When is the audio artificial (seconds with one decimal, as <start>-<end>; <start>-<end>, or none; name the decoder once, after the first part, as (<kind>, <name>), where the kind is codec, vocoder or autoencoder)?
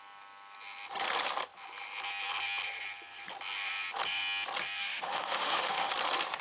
4.8-5.9 (autoencoder, DAC-VAE)